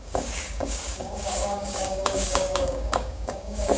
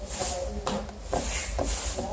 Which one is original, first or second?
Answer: second